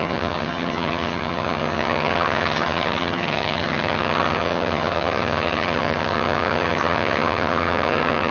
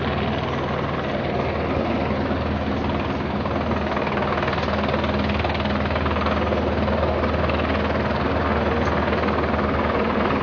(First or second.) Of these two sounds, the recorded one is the second